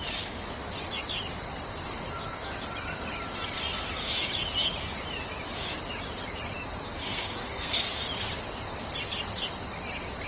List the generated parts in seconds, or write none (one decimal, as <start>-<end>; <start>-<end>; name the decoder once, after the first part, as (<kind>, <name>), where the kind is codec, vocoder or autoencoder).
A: 7.0-7.8 (codec, SNAC)